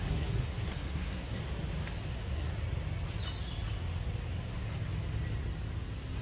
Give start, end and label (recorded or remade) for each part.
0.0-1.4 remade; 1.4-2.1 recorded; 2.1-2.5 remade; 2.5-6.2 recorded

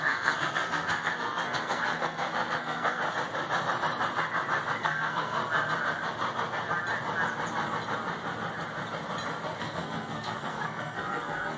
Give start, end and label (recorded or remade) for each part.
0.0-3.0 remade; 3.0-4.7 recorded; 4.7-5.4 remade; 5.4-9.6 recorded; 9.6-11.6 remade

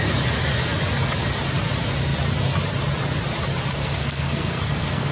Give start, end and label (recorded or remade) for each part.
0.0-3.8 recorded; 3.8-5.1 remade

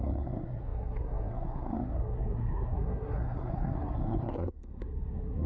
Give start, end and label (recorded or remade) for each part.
0.0-5.5 remade

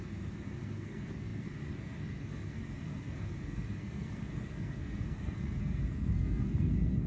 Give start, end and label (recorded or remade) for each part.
0.0-7.1 remade

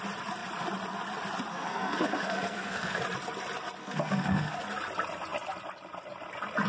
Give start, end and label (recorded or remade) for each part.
0.0-1.5 recorded; 1.5-3.0 remade; 3.0-3.8 recorded; 3.8-4.6 remade; 4.6-6.7 recorded

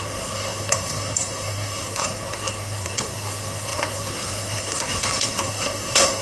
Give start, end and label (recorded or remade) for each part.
0.0-6.2 remade